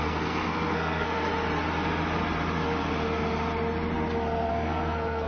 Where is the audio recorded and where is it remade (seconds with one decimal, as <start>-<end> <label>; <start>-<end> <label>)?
0.0-1.3 remade; 1.3-4.5 recorded; 4.5-5.3 remade